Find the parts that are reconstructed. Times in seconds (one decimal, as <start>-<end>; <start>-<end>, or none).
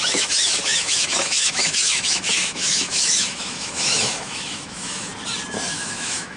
0.0-5.1; 5.7-6.4